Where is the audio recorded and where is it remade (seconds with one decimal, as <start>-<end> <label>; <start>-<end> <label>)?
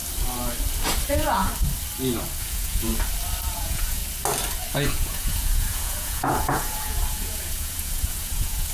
0.0-1.1 recorded; 1.1-1.5 remade; 1.5-2.4 recorded; 2.4-2.9 remade; 2.9-3.5 recorded; 3.5-4.0 remade; 4.0-4.7 recorded; 4.7-8.7 remade